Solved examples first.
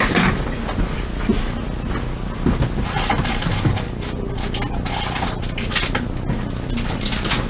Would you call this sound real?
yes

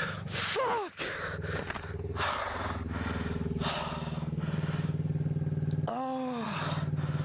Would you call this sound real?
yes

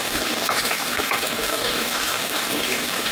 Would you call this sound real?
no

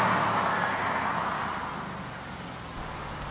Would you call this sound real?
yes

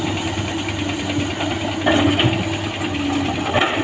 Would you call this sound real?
yes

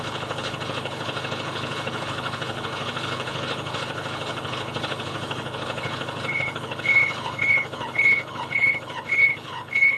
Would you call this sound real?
no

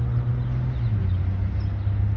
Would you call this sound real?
yes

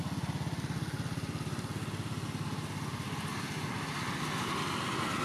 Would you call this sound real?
yes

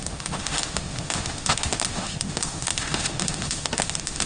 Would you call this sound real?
no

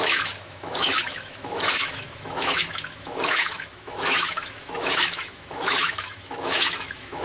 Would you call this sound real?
no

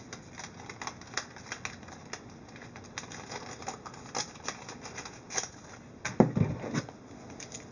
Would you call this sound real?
yes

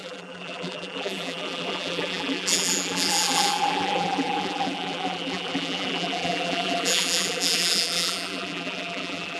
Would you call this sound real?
no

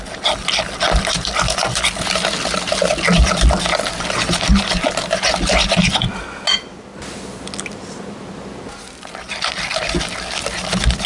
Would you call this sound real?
yes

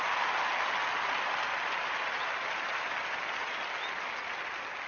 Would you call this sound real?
yes